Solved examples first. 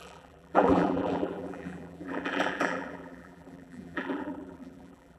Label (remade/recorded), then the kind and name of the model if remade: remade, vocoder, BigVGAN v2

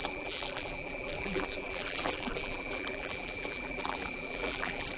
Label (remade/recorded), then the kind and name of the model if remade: remade, vocoder, BigVGAN v2